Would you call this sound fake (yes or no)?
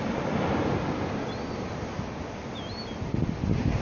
no